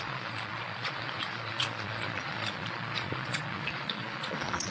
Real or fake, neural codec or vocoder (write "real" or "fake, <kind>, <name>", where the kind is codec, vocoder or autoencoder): fake, vocoder, Vocos